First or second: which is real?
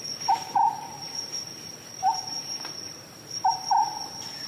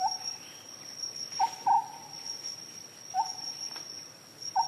second